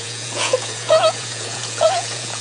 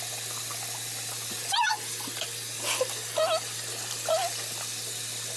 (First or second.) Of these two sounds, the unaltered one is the second